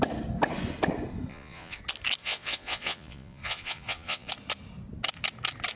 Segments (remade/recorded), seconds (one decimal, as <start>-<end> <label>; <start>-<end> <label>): 0.0-1.3 recorded; 1.3-1.8 remade; 1.8-2.2 recorded; 2.2-4.3 remade; 4.3-5.8 recorded